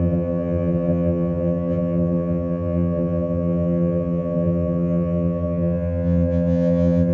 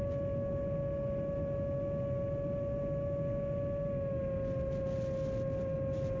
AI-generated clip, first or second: first